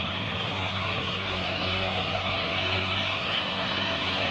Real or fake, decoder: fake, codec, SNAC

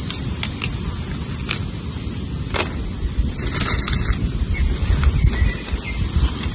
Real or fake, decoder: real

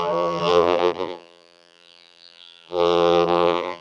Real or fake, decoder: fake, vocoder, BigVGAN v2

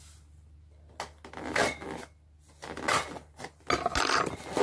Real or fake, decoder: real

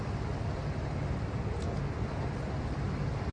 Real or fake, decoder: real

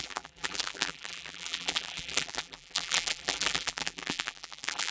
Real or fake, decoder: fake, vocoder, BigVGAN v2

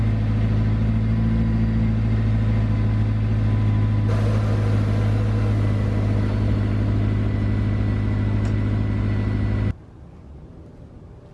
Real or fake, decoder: real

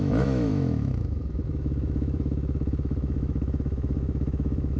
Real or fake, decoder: fake, autoencoder, DAC-VAE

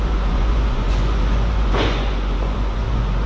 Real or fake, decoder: fake, vocoder, Vocos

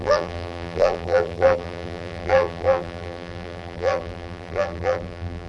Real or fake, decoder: fake, vocoder, BigVGAN v2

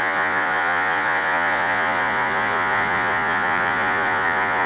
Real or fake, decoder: fake, vocoder, Vocos